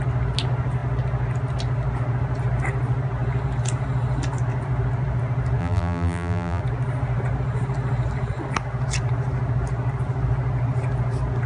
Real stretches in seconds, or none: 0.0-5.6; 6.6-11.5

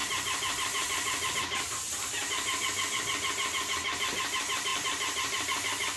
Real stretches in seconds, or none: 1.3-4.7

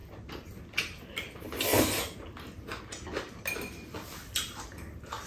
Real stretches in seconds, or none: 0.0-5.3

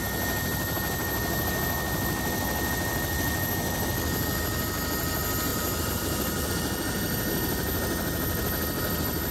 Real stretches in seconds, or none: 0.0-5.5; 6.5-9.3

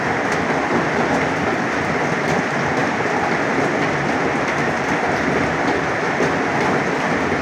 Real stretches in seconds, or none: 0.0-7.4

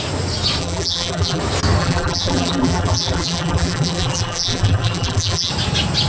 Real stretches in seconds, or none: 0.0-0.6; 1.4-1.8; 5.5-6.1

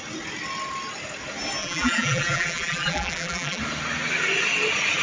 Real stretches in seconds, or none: 0.0-1.6; 3.6-5.0